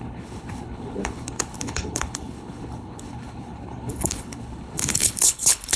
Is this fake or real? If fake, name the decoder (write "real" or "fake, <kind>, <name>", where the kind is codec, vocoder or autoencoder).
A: fake, codec, HILCodec